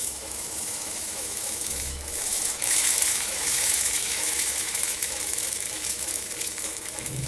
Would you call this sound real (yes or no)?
no